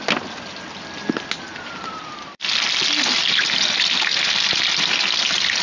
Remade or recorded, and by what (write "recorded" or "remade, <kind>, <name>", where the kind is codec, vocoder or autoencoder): recorded